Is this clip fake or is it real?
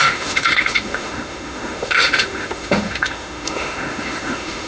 fake